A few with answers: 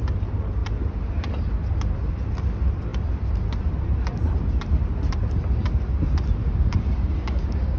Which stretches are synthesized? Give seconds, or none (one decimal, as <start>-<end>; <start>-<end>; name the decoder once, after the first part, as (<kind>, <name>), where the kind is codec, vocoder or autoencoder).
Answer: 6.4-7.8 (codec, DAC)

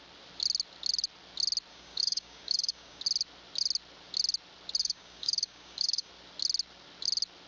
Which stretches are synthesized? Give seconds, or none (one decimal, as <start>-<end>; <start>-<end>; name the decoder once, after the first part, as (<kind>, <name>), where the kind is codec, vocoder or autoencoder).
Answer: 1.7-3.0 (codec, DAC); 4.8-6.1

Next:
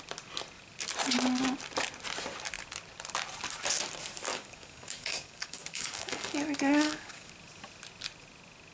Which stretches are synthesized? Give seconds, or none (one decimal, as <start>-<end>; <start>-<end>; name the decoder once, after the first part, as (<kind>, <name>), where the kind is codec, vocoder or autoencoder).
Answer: 4.3-7.3 (codec, DAC)

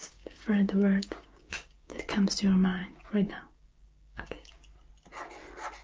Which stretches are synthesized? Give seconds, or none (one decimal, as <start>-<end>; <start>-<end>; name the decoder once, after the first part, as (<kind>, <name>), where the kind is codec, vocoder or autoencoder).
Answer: 0.0-2.0 (codec, DAC); 2.8-4.6

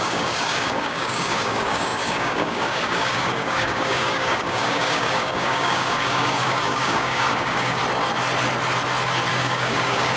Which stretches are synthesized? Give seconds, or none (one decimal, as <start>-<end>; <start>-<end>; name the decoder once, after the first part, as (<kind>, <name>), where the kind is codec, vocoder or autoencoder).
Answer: 0.0-7.8 (codec, DAC); 9.3-10.2